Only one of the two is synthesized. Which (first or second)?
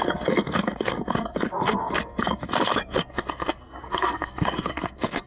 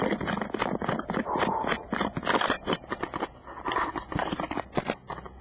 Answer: first